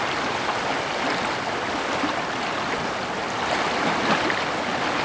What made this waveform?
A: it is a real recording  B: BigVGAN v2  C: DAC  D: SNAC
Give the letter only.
A